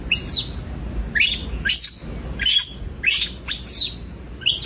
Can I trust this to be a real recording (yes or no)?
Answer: yes